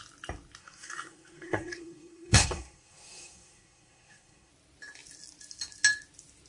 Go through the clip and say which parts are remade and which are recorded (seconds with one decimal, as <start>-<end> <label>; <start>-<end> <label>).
0.0-0.6 recorded; 0.6-4.5 remade; 4.5-6.5 recorded